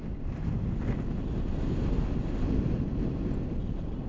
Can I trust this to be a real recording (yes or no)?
yes